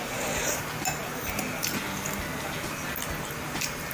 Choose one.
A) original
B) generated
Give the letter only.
A